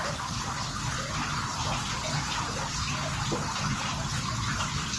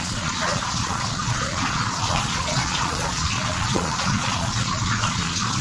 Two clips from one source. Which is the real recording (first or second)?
first